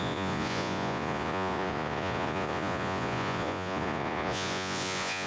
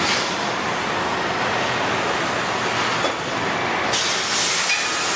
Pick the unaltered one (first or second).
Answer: second